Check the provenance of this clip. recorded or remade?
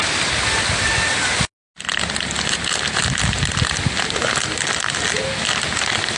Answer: recorded